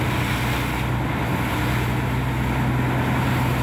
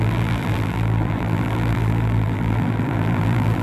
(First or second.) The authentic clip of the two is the first